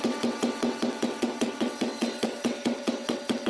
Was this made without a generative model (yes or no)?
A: no